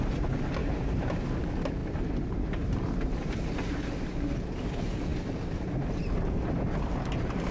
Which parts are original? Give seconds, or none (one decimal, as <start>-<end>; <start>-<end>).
0.0-0.6; 1.4-1.8; 3.4-7.5